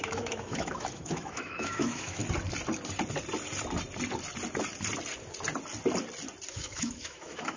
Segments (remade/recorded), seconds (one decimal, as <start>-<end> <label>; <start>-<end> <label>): 0.0-2.2 remade; 2.2-6.5 recorded; 6.5-7.6 remade